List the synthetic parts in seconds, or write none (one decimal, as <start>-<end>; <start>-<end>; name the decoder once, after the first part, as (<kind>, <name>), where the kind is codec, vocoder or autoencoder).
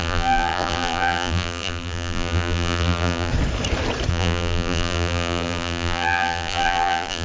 0.0-3.3 (vocoder, BigVGAN v2); 4.1-7.2